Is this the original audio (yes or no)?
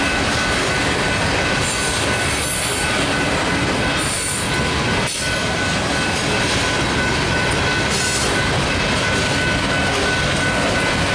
yes